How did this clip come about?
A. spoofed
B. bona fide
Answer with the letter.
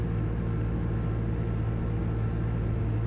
B